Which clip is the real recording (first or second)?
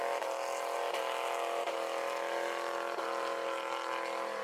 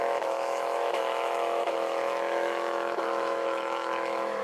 first